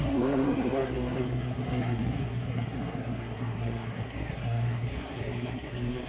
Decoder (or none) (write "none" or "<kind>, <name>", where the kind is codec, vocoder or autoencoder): codec, SNAC